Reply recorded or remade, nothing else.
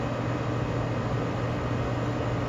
recorded